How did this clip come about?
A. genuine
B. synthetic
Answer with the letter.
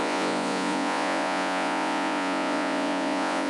B